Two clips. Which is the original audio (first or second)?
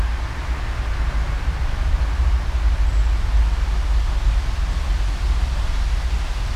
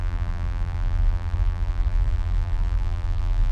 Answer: first